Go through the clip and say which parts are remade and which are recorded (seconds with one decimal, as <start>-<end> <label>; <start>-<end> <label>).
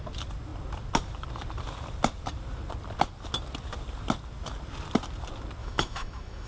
0.0-5.6 recorded; 5.6-6.5 remade